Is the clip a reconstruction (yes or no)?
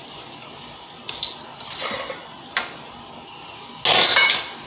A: no